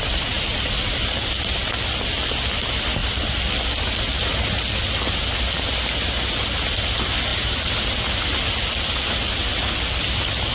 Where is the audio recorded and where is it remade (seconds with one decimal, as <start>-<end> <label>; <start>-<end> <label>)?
0.0-10.5 recorded